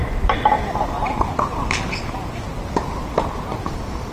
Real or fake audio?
real